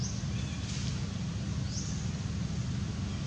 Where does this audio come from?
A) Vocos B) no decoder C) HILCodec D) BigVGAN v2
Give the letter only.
B